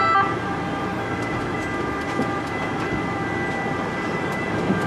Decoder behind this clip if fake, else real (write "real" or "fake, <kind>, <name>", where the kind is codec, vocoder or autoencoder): real